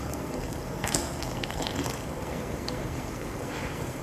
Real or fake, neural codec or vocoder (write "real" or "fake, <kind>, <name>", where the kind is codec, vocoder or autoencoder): fake, codec, SNAC